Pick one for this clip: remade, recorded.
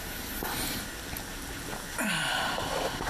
recorded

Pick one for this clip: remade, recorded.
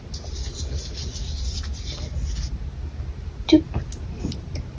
recorded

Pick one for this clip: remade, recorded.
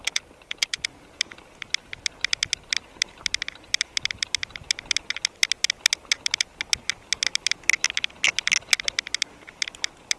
recorded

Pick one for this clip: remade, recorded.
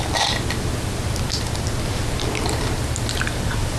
recorded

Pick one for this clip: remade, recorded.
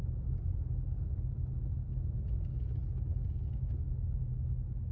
recorded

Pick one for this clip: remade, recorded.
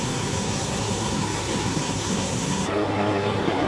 remade